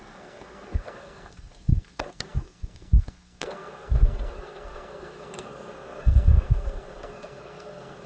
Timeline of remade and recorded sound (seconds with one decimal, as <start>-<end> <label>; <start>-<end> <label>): 0.0-8.1 remade